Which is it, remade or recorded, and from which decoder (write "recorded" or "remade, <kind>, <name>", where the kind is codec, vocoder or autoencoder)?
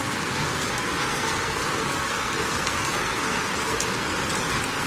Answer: remade, codec, SNAC